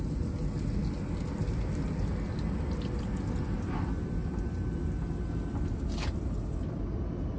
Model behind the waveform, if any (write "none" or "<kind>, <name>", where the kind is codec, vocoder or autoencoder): none